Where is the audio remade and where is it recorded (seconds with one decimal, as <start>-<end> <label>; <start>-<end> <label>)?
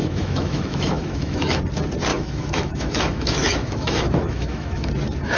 0.0-1.6 remade; 1.6-2.1 recorded; 2.1-4.9 remade; 4.9-5.4 recorded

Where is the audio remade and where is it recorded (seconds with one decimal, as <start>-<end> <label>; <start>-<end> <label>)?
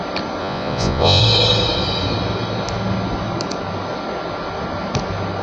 0.0-0.4 recorded; 0.4-1.2 remade; 1.2-5.4 recorded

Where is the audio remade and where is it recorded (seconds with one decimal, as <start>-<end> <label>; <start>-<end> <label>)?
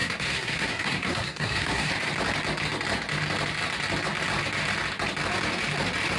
0.0-1.9 remade; 1.9-6.2 recorded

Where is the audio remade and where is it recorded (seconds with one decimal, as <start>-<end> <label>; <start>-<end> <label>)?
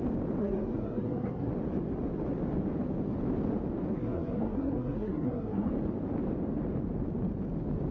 0.0-0.4 recorded; 0.4-1.5 remade; 1.5-3.9 recorded; 3.9-5.7 remade; 5.7-7.9 recorded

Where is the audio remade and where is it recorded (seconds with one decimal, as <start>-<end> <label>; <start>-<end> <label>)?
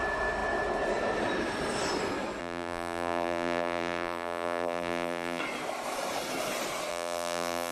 0.0-2.4 recorded; 2.4-5.4 remade; 5.4-6.9 recorded; 6.9-7.7 remade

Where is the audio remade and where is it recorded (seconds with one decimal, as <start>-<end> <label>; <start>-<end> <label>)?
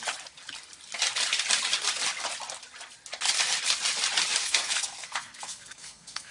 0.0-4.4 recorded; 4.4-6.3 remade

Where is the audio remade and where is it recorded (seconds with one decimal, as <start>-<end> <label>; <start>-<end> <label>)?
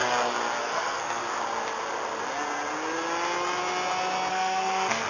0.0-0.6 recorded; 0.6-1.2 remade; 1.2-4.3 recorded; 4.3-5.1 remade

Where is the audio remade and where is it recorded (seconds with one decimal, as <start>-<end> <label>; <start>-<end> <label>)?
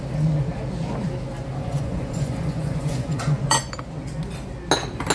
0.0-1.6 recorded; 1.6-3.7 remade; 3.7-5.1 recorded